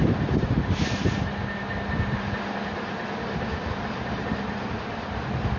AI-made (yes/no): no